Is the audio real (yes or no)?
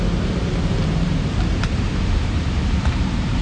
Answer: no